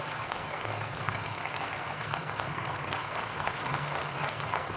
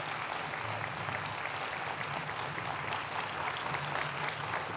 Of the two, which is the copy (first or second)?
first